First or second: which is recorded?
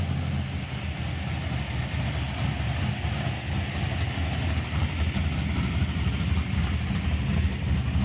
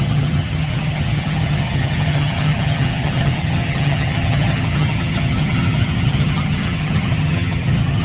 first